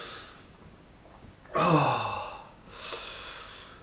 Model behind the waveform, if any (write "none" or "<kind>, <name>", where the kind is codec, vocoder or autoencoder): codec, DAC